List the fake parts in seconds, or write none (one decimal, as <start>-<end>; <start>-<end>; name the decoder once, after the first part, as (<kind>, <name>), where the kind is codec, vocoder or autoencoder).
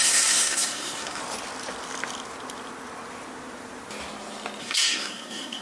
0.0-1.2 (codec, SNAC); 4.6-5.6